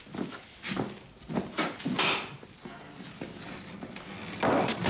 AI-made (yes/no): no